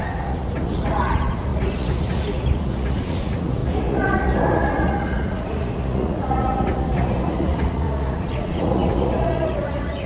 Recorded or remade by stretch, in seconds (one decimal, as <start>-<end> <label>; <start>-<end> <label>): 0.0-10.1 remade